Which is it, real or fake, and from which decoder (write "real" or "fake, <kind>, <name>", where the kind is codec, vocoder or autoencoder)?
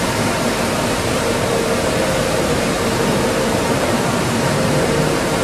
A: fake, vocoder, BigVGAN v2